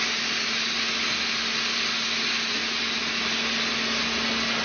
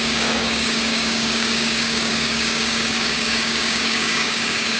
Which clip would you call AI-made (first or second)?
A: second